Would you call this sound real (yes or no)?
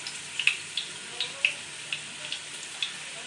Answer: yes